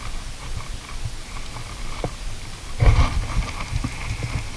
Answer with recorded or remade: recorded